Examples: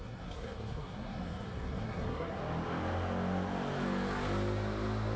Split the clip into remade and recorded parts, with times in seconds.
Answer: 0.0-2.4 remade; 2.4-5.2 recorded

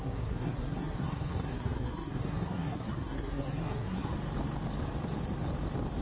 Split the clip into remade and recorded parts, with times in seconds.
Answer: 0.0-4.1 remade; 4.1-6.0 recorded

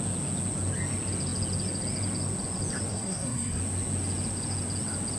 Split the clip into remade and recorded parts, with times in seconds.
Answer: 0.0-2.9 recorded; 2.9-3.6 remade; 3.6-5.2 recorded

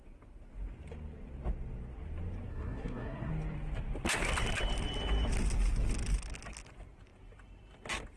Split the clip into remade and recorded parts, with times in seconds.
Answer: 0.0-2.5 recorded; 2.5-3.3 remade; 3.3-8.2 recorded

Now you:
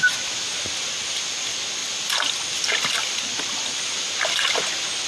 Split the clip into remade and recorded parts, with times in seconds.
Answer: 0.0-5.1 recorded

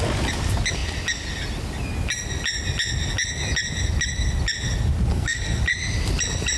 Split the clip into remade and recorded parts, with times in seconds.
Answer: 0.0-5.1 recorded; 5.1-5.6 remade; 5.6-6.6 recorded

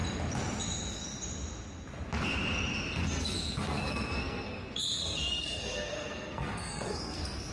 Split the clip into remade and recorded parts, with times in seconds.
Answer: 0.0-3.0 recorded; 3.0-7.5 remade

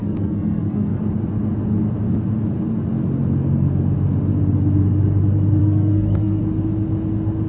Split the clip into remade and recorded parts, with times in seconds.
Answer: 0.0-1.0 remade; 1.0-5.6 recorded; 5.6-6.4 remade; 6.4-7.5 recorded